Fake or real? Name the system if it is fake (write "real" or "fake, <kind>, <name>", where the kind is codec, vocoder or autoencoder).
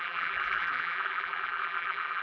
fake, vocoder, BigVGAN v2